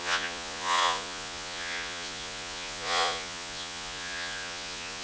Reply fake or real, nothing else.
fake